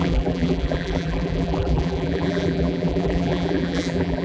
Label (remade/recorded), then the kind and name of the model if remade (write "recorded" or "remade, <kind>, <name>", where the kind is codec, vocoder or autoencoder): remade, vocoder, BigVGAN v2